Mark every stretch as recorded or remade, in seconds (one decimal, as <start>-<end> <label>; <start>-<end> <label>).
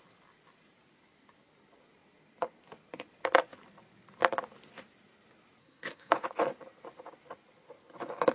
0.0-5.6 recorded; 5.6-6.1 remade; 6.1-8.3 recorded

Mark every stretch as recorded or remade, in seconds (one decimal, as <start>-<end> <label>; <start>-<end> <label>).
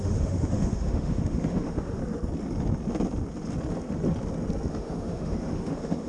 0.0-2.0 remade; 2.0-4.7 recorded; 4.7-6.1 remade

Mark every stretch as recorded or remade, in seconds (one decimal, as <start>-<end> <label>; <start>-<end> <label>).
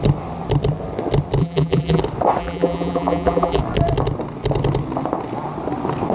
0.0-1.4 recorded; 1.4-2.0 remade; 2.0-2.4 recorded; 2.4-3.6 remade; 3.6-6.1 recorded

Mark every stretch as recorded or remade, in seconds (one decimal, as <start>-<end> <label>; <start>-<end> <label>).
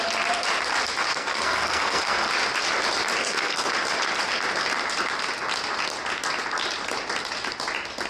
0.0-1.1 recorded; 1.1-2.3 remade; 2.3-3.2 recorded; 3.2-3.7 remade; 3.7-8.1 recorded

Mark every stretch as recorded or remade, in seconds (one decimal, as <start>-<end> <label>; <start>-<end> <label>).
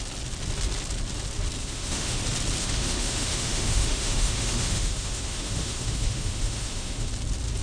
0.0-1.6 recorded; 1.6-2.2 remade; 2.2-2.6 recorded; 2.6-7.1 remade; 7.1-7.6 recorded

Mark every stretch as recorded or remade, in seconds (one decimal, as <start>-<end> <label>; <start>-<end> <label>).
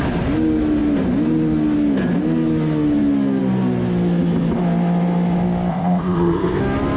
0.0-5.7 recorded; 5.7-6.6 remade; 6.6-7.0 recorded